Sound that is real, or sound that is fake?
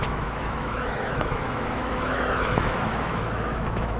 fake